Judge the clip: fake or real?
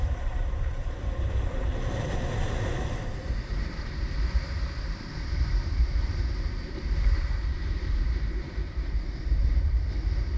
fake